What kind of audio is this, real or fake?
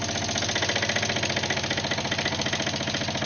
real